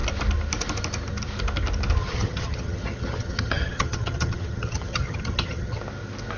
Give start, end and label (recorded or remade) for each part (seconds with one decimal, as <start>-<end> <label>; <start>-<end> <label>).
0.0-2.0 recorded; 2.0-5.8 remade; 5.8-6.4 recorded